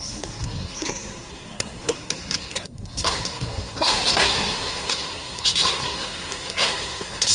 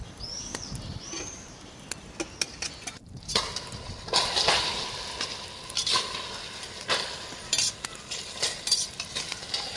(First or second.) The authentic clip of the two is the second